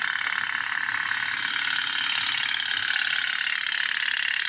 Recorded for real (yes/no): yes